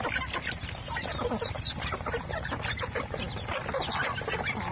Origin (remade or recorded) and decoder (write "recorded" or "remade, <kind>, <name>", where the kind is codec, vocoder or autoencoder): recorded